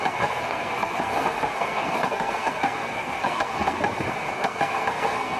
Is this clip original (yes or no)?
no